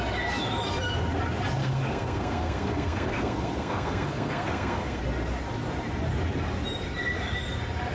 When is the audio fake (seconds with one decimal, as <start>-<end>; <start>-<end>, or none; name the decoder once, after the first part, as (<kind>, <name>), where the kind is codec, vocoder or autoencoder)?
1.6-5.0 (codec, SNAC)

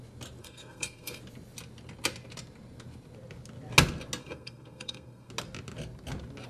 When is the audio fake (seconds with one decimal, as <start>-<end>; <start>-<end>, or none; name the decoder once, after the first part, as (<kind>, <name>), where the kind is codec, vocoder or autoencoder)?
0.4-1.2 (codec, SNAC); 4.2-5.3

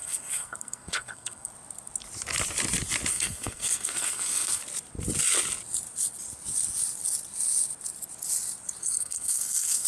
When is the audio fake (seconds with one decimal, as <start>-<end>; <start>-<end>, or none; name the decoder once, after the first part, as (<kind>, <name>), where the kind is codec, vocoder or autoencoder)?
0.0-1.5 (codec, SNAC); 3.1-4.6; 8.8-9.9

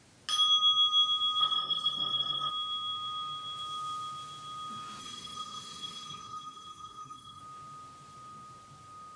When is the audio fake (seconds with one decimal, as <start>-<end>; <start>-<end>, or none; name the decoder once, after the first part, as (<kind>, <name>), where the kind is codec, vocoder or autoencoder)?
1.4-2.5 (codec, SNAC); 5.0-7.4

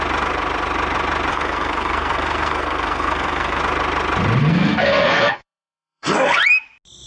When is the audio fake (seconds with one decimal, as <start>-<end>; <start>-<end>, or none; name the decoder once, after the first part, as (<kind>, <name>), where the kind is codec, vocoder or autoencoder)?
1.3-3.6 (codec, SNAC); 4.4-6.4

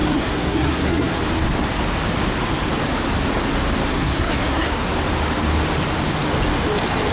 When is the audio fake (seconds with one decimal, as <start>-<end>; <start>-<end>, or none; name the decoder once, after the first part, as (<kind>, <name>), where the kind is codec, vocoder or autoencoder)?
0.0-1.2 (codec, SNAC); 3.9-4.9

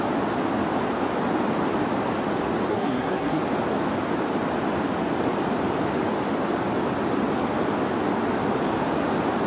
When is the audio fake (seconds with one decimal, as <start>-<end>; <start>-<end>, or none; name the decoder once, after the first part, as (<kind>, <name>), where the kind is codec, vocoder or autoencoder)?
2.7-3.4 (codec, SNAC)